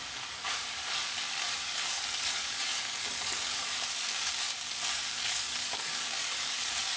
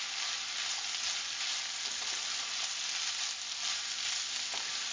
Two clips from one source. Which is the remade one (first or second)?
first